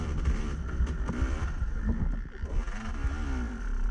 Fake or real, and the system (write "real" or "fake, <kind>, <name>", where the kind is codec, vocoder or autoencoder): real